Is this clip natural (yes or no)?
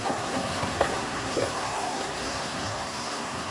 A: no